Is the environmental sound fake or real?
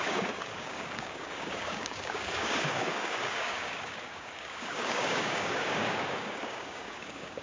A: fake